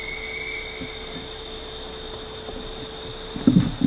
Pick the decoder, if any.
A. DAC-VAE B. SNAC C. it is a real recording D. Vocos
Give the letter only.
C